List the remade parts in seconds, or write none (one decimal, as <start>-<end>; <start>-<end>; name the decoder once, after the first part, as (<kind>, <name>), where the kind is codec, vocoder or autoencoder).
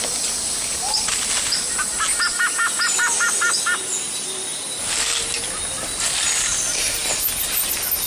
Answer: none